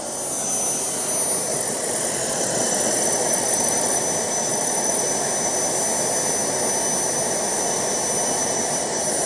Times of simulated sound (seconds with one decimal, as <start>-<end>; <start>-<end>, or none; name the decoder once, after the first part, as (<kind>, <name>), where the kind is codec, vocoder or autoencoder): 1.5-4.0 (vocoder, Vocos); 4.5-5.0